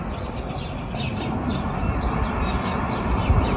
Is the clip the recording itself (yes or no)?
yes